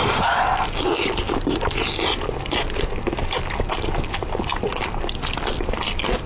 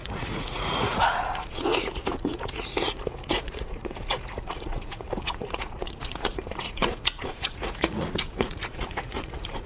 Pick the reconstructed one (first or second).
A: second